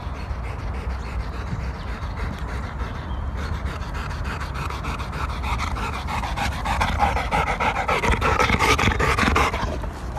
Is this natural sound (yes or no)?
yes